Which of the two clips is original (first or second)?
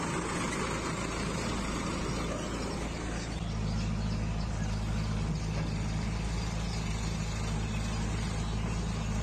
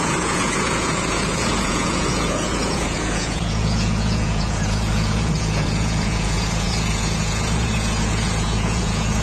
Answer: first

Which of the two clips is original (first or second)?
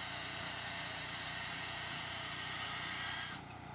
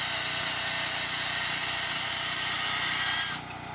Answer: second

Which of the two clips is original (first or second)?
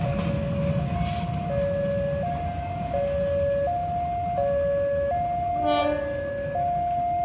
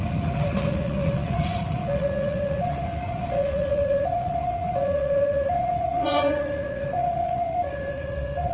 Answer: first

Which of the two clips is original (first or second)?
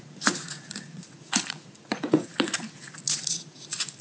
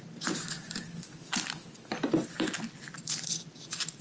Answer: second